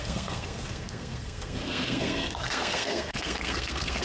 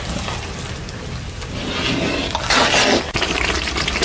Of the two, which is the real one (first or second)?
second